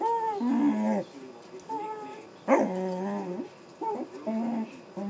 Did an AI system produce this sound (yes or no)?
no